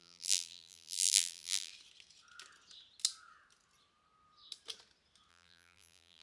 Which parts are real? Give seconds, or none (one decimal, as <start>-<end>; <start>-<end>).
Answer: 1.7-5.3